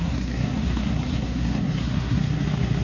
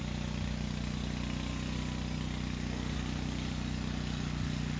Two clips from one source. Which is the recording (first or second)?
second